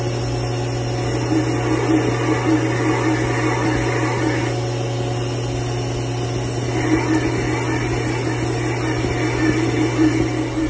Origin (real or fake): real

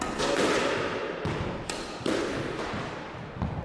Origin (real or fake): real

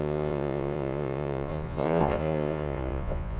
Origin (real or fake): fake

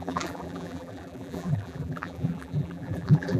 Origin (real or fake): fake